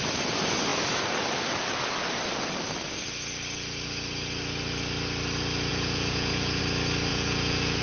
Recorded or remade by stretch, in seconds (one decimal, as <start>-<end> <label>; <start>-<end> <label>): 0.0-5.7 recorded; 5.7-6.6 remade; 6.6-7.1 recorded; 7.1-7.8 remade